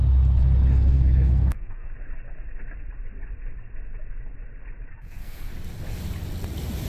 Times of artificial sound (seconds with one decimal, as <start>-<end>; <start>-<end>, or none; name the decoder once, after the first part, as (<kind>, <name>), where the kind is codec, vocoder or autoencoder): 0.9-1.9 (codec, SNAC); 4.9-5.5